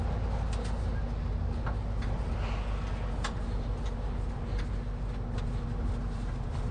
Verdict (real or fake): real